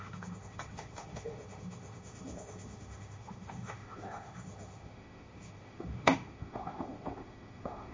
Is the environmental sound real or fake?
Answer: fake